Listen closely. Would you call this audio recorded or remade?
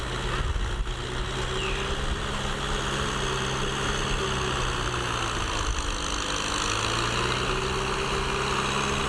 recorded